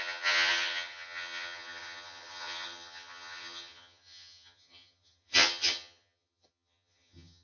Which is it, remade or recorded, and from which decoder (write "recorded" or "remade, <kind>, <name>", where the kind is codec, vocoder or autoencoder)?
remade, vocoder, HiFi-GAN